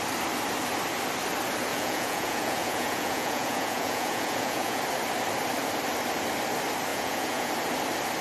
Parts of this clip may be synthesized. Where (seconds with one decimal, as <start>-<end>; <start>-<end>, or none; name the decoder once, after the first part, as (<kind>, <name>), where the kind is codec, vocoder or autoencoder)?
1.7-4.8 (vocoder, Vocos); 6.9-7.5